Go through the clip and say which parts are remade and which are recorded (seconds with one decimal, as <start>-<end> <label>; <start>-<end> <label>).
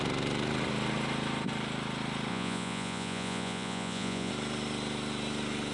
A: 0.0-2.3 recorded; 2.3-4.3 remade; 4.3-5.7 recorded